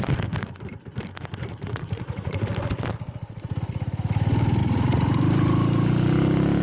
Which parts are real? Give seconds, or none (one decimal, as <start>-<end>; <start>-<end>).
0.0-1.4; 2.5-4.6; 5.2-6.6